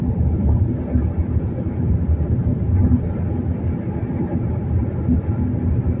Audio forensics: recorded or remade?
recorded